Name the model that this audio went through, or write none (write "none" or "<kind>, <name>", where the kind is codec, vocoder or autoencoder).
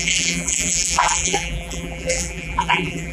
vocoder, BigVGAN v2